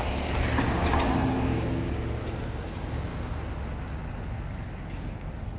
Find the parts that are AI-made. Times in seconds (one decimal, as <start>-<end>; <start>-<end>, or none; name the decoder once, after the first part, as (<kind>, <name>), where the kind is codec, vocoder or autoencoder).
0.7-1.9 (codec, DAC)